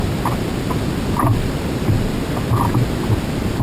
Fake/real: real